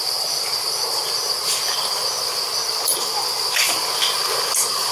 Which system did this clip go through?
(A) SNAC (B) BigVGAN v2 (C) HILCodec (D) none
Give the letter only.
D